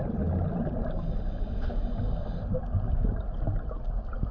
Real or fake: real